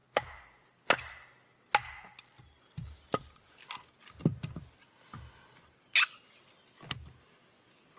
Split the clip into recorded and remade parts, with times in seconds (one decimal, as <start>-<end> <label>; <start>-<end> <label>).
0.0-8.0 recorded